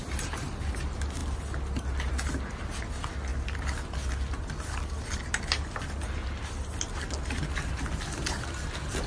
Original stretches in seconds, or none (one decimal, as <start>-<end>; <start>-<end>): 0.5-9.1